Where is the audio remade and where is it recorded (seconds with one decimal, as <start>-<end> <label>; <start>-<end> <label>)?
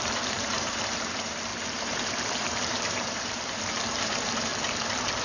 0.0-4.5 remade; 4.5-5.2 recorded